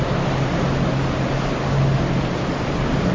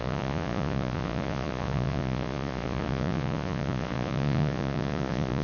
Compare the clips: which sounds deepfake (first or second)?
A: second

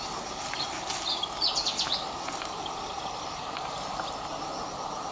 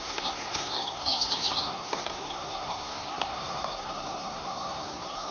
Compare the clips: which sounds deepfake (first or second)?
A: second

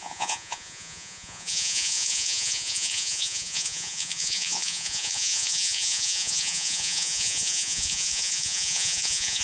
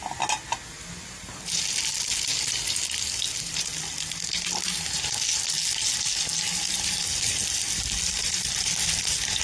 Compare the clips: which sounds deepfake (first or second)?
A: first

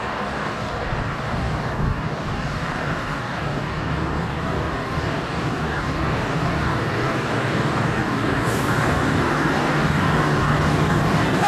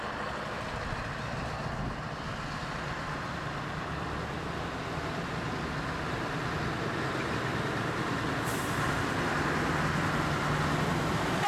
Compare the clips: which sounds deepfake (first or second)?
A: first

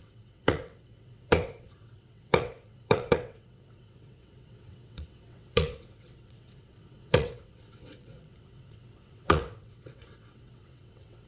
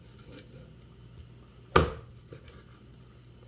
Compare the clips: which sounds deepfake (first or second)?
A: first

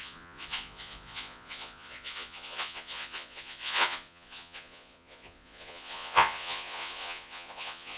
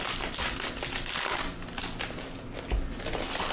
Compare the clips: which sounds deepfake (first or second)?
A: first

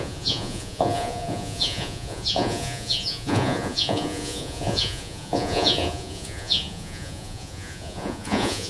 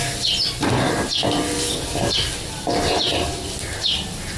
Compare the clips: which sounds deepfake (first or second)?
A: first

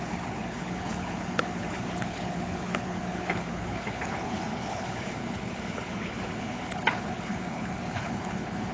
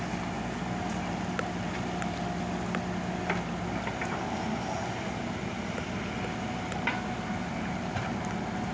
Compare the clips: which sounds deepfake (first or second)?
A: first